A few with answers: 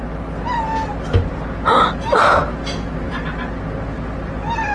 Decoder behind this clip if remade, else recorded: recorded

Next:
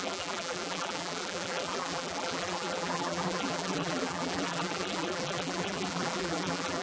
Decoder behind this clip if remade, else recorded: remade, vocoder, BigVGAN v2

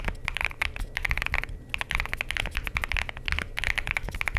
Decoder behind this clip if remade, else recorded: recorded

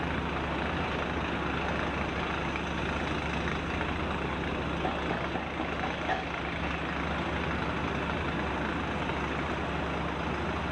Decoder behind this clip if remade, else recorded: recorded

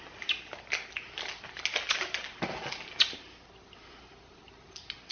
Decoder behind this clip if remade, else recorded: recorded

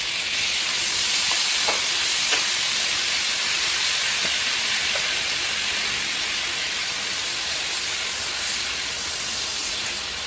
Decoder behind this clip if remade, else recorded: recorded